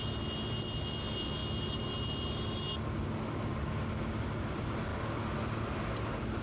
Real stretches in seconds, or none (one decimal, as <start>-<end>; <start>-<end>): 0.0-6.4